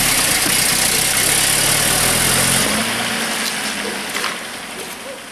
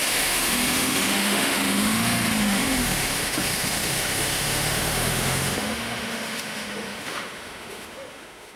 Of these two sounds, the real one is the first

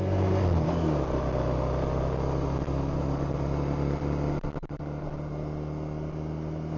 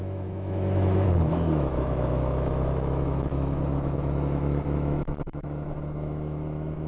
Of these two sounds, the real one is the first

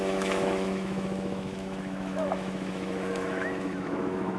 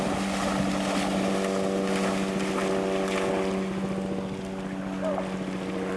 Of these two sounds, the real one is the second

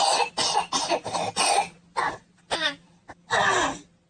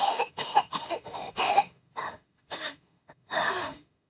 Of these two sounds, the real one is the first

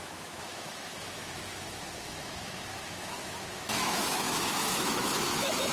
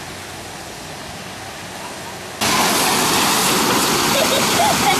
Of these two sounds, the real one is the second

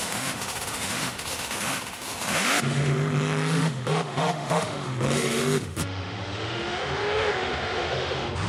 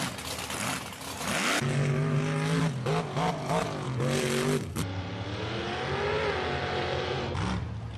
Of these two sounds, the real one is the second